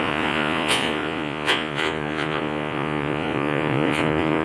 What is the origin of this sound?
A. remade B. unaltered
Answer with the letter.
A